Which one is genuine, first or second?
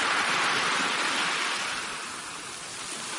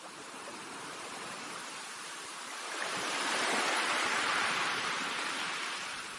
first